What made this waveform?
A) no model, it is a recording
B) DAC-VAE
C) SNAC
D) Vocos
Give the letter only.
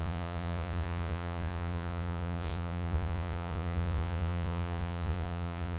D